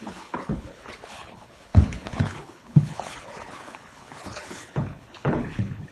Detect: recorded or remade remade